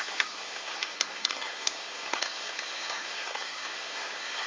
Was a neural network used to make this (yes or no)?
yes